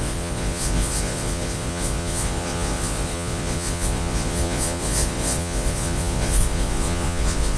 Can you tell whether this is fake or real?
fake